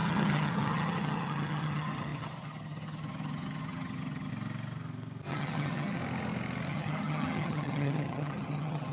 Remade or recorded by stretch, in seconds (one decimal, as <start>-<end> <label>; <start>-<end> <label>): 0.0-4.3 remade; 4.3-5.3 recorded; 5.3-6.0 remade; 6.0-6.7 recorded; 6.7-8.9 remade